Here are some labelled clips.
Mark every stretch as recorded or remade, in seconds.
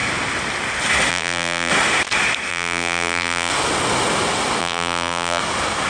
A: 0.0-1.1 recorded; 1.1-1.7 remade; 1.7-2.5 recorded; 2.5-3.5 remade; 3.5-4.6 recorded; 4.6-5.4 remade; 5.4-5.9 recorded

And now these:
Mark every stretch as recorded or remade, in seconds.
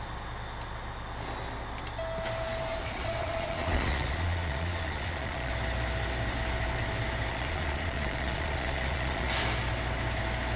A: 0.0-2.7 recorded; 2.7-5.5 remade; 5.5-7.3 recorded; 7.3-9.3 remade; 9.3-10.6 recorded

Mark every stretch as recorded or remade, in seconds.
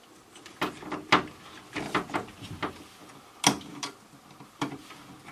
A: 0.0-5.3 recorded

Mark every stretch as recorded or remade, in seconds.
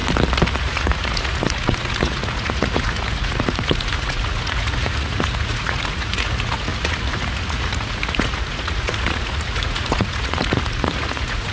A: 0.0-0.6 recorded; 0.6-11.5 remade